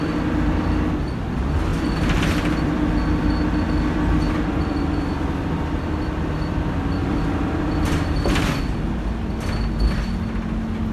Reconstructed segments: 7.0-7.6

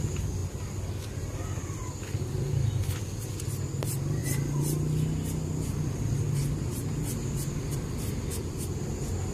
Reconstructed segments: 4.2-8.0

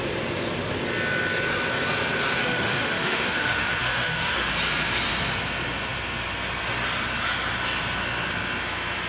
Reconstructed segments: 2.4-4.5

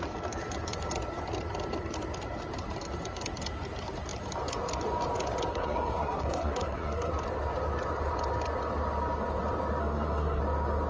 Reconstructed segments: 5.5-7.1; 9.8-10.4

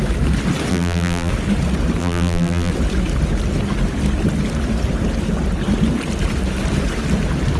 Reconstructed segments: 0.7-1.3; 2.0-2.7

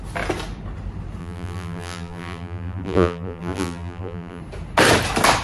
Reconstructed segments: 1.2-4.4

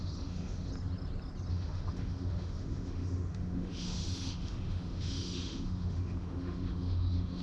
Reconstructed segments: 0.0-0.7; 1.5-7.4